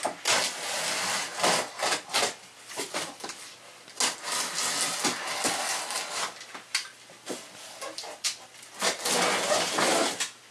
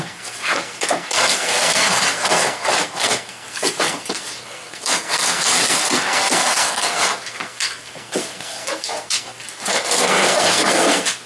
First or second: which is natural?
first